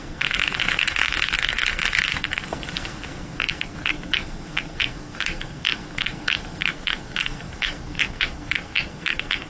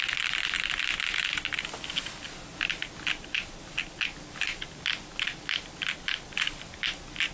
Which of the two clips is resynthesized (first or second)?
first